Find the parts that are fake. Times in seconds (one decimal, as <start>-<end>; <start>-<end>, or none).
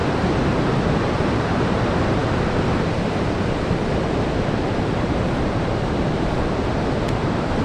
1.0-3.8; 4.7-7.6